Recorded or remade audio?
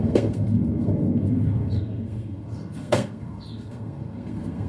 remade